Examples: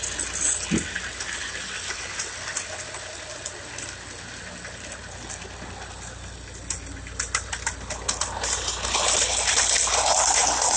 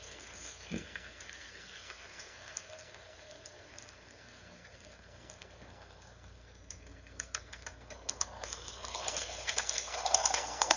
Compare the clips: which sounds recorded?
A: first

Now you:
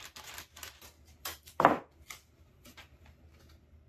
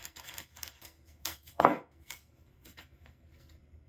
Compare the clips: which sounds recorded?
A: first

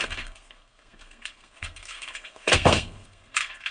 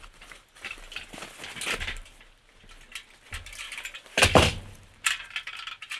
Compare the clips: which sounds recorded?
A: second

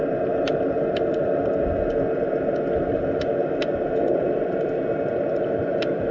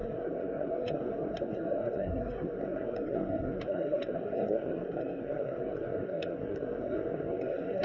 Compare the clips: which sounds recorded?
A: first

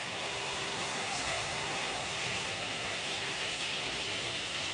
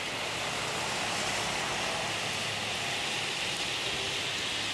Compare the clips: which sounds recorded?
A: second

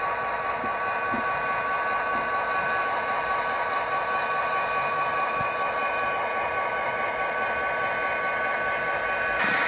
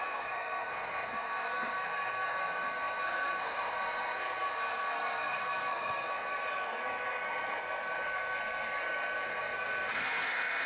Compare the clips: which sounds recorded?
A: first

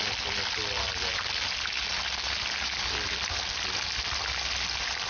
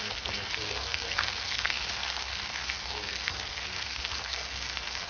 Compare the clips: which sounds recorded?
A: first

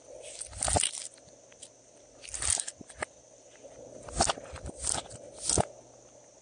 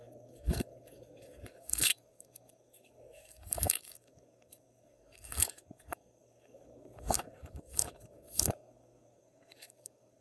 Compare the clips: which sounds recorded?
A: first